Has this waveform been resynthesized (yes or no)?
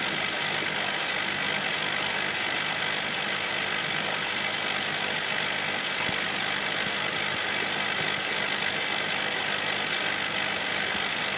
no